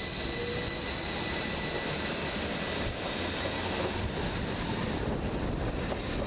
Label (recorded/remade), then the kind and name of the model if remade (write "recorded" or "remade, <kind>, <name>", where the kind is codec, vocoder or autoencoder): recorded